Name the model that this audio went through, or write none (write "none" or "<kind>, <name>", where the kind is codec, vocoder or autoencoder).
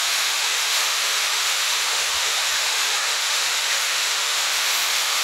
autoencoder, DAC-VAE